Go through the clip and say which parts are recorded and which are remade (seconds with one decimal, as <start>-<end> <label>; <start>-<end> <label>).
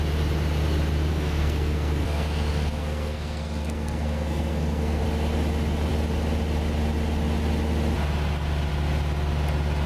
0.0-1.1 recorded; 1.1-5.0 remade; 5.0-9.9 recorded